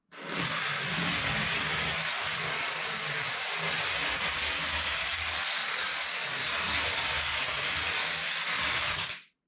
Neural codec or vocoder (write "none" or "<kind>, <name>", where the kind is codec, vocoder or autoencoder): none